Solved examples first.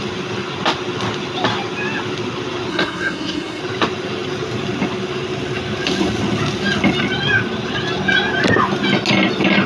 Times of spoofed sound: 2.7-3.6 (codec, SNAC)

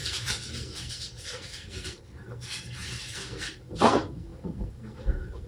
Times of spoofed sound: 0.0-5.5 (codec, SNAC)